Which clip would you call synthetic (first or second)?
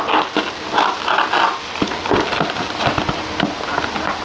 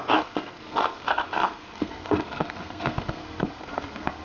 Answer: second